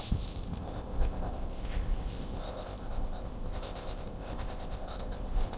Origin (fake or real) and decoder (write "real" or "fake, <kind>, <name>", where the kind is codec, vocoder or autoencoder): fake, codec, ZipCodec